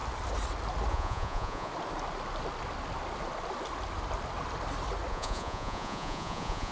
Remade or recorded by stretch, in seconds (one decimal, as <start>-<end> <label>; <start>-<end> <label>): 0.0-0.9 recorded; 0.9-1.7 remade; 1.7-5.1 recorded; 5.1-6.7 remade